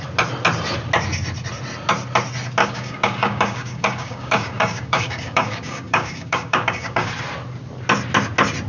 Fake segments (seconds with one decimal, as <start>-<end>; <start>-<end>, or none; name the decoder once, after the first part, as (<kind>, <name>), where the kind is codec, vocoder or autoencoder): 2.6-7.1 (codec, DAC)